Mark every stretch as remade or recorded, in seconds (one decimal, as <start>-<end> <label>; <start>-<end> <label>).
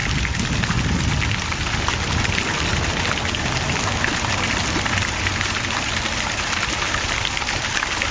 0.0-8.1 recorded